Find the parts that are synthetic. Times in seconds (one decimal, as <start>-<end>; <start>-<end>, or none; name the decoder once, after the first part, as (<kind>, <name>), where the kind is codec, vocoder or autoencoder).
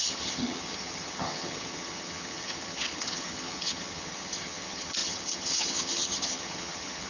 0.0-7.1 (vocoder, HiFi-GAN)